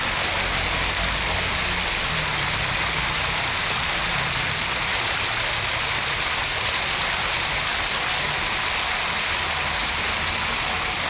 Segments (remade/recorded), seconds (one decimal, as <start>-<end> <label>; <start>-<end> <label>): 0.0-11.1 recorded